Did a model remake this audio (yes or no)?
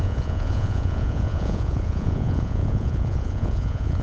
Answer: yes